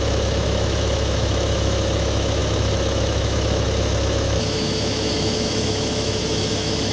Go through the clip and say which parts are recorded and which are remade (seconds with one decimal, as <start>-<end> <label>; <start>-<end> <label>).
0.0-6.9 remade

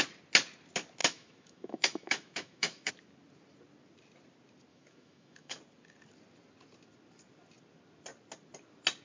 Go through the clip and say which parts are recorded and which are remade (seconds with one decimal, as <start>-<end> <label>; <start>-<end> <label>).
0.0-1.0 recorded; 1.0-2.9 remade; 2.9-4.7 recorded; 4.7-5.6 remade; 5.6-9.0 recorded